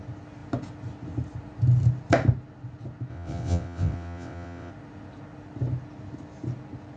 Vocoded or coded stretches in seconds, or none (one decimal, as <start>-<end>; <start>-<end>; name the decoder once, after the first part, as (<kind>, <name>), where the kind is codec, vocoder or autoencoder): 3.1-4.7 (vocoder, WaveNeXt)